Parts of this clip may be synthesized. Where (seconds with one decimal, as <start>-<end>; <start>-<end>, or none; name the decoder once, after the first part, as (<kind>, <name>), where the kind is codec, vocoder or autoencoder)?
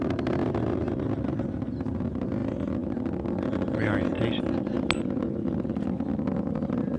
none